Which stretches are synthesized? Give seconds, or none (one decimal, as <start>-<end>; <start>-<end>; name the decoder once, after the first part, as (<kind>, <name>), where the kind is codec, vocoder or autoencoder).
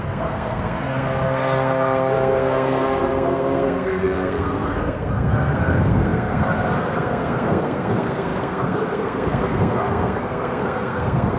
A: 0.0-11.4 (codec, SNAC)